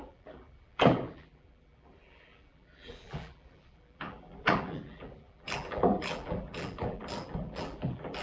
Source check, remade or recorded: remade